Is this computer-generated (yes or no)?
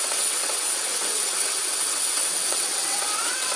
yes